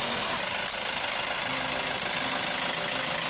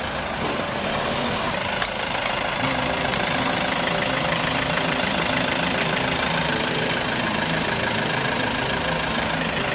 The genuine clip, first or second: first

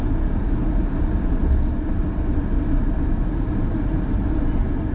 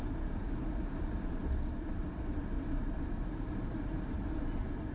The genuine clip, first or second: first